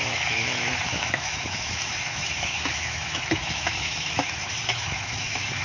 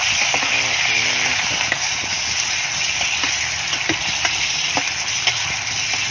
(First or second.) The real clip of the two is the second